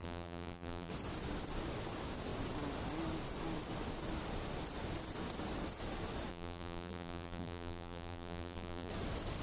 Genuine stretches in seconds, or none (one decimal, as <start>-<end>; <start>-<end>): 0.9-6.3; 8.9-9.4

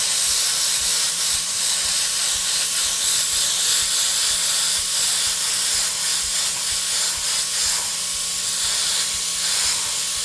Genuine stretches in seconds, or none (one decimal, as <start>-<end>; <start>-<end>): 0.0-0.9; 3.0-10.2

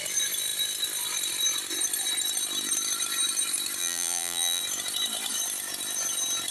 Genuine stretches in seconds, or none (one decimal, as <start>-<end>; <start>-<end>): 0.0-3.8; 4.6-6.5

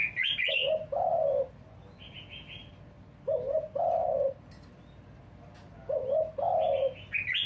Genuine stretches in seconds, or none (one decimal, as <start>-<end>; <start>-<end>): 0.0-7.5

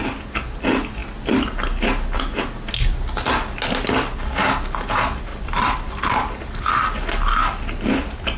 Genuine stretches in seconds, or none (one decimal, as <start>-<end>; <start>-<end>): 0.0-5.3; 6.0-8.4

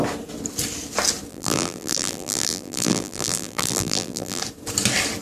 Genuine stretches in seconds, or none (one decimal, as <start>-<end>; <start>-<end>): 0.0-1.3; 4.4-5.2